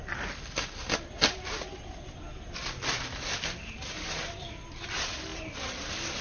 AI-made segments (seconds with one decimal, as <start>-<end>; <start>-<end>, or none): none